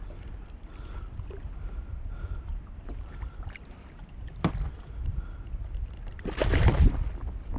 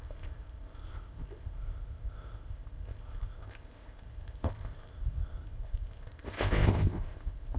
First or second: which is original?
first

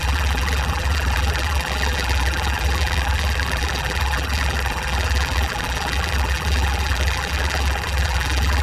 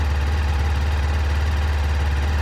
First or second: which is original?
second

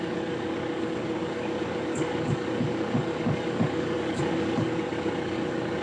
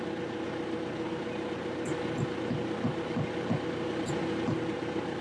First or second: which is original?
second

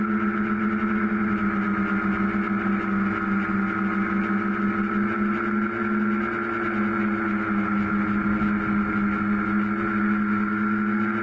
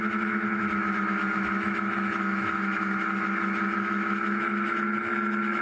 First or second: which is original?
first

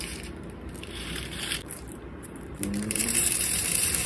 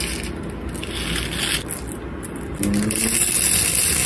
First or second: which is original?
second